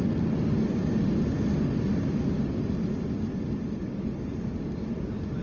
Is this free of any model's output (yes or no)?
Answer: yes